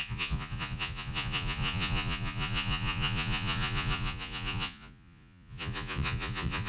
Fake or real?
fake